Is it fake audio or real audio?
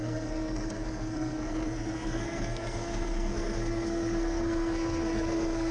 fake